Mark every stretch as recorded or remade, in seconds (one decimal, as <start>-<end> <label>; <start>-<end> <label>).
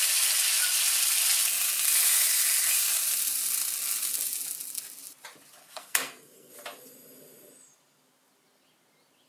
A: 0.0-5.6 recorded; 5.6-6.5 remade; 6.5-9.3 recorded